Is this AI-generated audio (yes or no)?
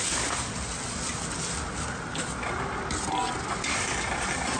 no